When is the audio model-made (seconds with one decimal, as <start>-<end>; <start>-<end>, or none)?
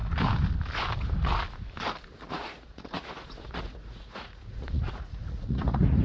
2.3-6.0